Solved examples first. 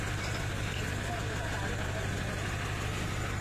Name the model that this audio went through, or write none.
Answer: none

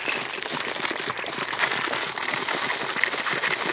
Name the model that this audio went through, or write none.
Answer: none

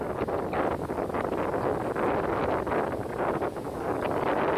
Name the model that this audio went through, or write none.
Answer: none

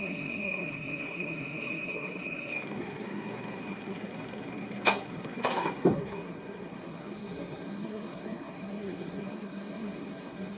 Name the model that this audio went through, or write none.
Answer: codec, SNAC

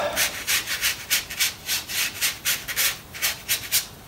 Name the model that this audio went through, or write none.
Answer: vocoder, BigVGAN v2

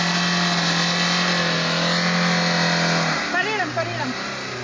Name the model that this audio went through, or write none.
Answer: none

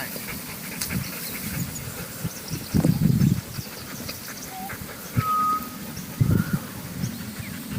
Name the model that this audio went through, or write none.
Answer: none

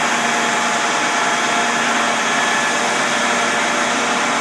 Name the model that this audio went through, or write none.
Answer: none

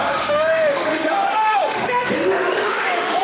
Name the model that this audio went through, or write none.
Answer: autoencoder, DAC-VAE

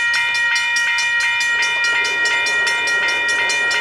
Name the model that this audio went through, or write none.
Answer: none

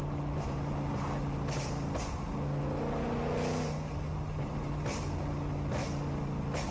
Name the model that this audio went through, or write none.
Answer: none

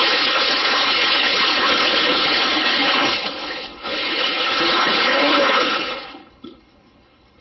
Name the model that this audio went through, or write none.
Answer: codec, HILCodec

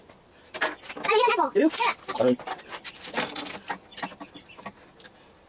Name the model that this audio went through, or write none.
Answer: vocoder, BigVGAN v2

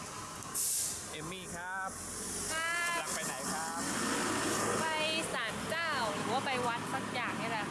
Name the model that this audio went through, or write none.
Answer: none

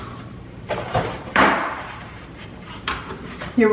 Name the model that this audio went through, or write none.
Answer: vocoder, BigVGAN v2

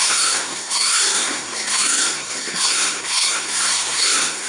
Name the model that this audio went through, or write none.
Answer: codec, SNAC